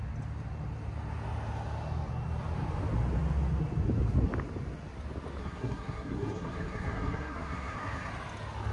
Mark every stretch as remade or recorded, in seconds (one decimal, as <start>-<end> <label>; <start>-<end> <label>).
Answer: 0.0-5.4 recorded; 5.4-8.1 remade; 8.1-8.7 recorded